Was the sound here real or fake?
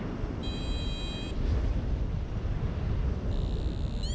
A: real